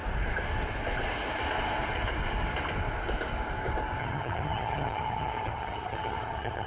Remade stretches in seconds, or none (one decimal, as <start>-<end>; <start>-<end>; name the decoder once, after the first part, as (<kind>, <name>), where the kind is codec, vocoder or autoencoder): 4.0-6.7 (vocoder, HiFi-GAN)